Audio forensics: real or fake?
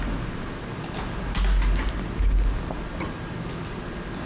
real